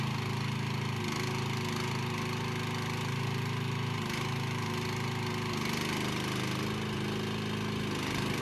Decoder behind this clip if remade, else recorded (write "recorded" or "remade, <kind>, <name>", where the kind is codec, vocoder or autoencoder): recorded